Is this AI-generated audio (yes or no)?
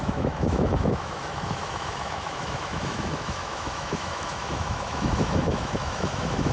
yes